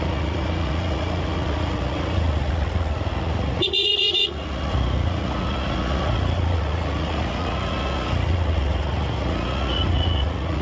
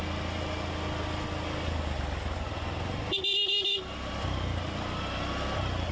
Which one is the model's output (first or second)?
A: first